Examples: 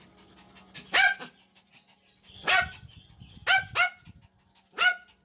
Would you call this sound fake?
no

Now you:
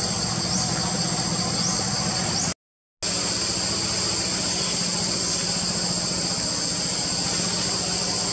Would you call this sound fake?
no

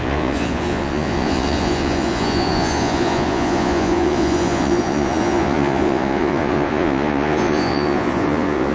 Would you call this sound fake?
yes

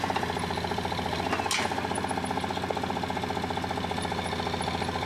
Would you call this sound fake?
no